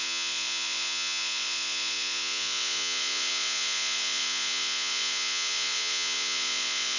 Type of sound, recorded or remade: remade